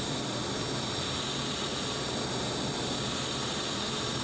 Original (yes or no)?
yes